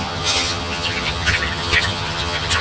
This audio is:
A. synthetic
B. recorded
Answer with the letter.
A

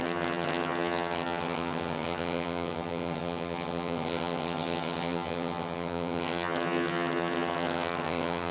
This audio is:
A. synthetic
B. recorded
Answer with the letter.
A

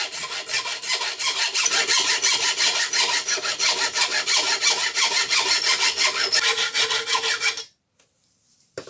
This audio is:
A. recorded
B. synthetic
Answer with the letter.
A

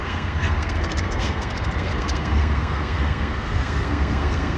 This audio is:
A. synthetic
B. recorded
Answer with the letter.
A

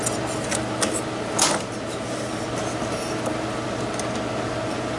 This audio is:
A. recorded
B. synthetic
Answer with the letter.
A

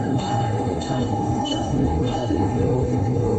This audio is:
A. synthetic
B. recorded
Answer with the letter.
A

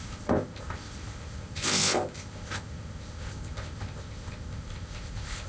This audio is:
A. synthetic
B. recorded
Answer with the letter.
A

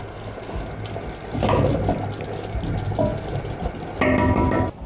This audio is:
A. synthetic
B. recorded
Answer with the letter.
B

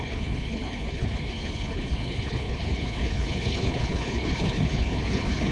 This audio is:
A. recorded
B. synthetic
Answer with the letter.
B